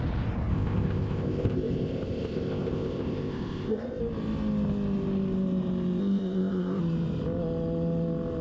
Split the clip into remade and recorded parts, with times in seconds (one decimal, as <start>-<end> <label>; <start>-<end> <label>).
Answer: 0.0-0.5 recorded; 0.5-4.0 remade; 4.0-6.0 recorded; 6.0-6.8 remade; 6.8-8.4 recorded

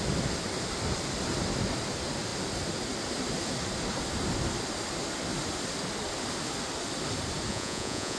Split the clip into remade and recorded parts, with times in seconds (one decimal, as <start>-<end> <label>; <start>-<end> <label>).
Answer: 0.0-7.5 recorded; 7.5-8.2 remade

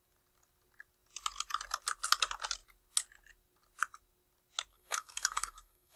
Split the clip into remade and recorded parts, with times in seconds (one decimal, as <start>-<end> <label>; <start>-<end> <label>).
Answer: 0.0-4.7 recorded; 4.7-6.0 remade

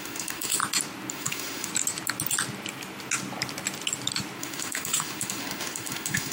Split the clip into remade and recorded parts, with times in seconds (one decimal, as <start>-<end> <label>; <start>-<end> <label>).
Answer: 0.0-0.6 remade; 0.6-1.1 recorded; 1.1-1.7 remade; 1.7-4.4 recorded; 4.4-6.3 remade

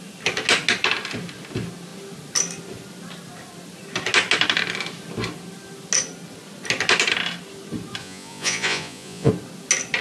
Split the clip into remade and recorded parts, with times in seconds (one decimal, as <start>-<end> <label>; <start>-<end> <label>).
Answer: 0.0-8.0 recorded; 8.0-9.3 remade; 9.3-10.0 recorded

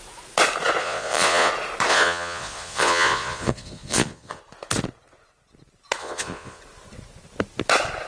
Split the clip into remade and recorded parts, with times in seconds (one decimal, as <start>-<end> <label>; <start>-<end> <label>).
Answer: 0.0-0.8 recorded; 0.8-1.5 remade; 1.5-1.9 recorded; 1.9-4.4 remade; 4.4-6.0 recorded; 6.0-6.6 remade; 6.6-8.1 recorded

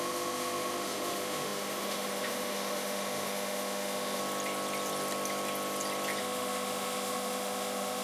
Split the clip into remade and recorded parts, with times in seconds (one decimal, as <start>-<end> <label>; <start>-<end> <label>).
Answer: 0.0-4.2 remade; 4.2-6.2 recorded; 6.2-8.0 remade

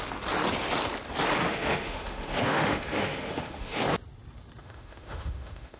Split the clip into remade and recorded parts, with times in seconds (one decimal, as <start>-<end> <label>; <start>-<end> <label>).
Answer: 0.0-1.4 recorded; 1.4-3.8 remade; 3.8-4.6 recorded; 4.6-5.8 remade